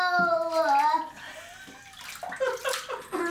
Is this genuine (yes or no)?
yes